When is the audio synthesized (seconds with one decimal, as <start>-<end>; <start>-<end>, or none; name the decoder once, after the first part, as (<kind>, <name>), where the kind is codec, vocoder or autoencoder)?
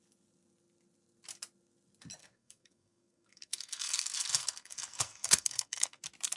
2.2-6.0 (codec, SNAC)